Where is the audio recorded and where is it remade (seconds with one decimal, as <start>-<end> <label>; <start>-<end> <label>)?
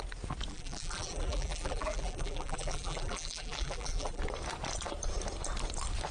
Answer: 0.0-0.5 recorded; 0.5-4.2 remade; 4.2-6.1 recorded